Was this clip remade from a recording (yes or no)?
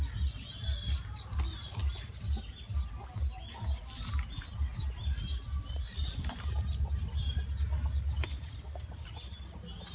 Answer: no